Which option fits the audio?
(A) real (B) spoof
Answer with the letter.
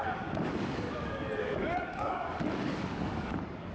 B